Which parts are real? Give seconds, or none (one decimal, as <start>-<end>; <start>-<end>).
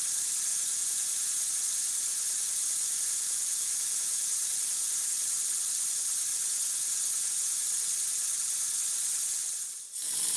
0.0-0.5; 1.5-2.1; 5.4-6.3; 7.3-10.4